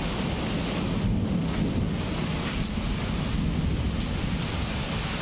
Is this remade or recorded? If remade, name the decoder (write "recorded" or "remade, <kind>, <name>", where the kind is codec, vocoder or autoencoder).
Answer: recorded